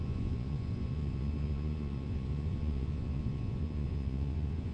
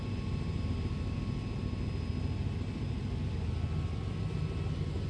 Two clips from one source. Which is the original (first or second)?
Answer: second